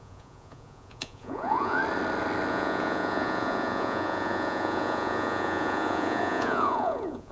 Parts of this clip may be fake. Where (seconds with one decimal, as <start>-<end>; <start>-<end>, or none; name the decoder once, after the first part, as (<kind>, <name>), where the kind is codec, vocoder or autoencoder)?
0.0-1.8 (vocoder, Vocos); 2.5-7.3

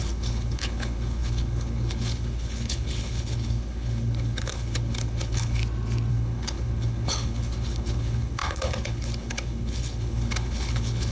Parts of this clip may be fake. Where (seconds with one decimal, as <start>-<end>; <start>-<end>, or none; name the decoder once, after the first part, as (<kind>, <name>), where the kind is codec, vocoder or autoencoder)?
0.0-5.6 (codec, HILCodec); 6.1-11.1

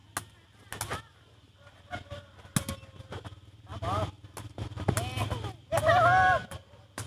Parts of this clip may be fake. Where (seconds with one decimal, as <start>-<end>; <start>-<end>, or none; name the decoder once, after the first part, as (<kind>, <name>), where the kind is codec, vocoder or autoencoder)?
none

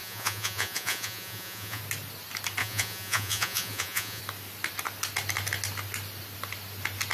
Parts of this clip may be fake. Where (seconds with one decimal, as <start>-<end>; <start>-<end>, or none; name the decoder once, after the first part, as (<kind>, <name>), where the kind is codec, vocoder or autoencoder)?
0.0-1.8 (vocoder, Vocos); 2.6-4.2